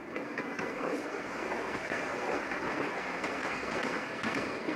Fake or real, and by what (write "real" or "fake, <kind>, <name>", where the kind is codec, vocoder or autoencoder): fake, codec, SNAC